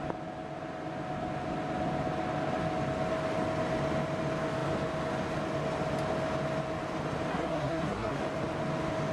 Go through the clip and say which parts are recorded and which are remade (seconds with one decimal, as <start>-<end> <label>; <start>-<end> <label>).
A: 0.0-7.3 recorded; 7.3-8.2 remade; 8.2-9.1 recorded